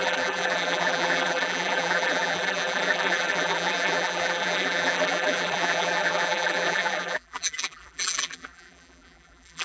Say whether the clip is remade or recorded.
remade